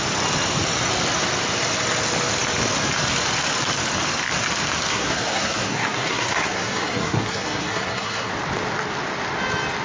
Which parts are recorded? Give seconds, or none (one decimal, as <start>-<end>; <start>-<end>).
0.0-4.9; 8.3-9.8